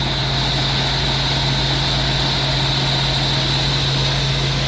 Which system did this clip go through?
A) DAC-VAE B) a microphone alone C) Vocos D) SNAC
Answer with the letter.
B